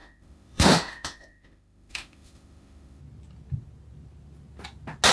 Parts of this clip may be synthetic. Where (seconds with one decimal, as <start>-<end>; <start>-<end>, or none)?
0.0-3.0